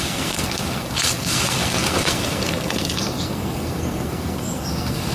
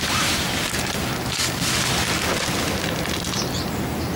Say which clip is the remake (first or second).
first